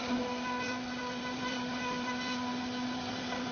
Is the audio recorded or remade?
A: recorded